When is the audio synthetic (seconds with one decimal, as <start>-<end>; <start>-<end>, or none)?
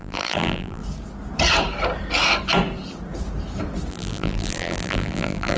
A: 0.0-0.8; 3.9-5.6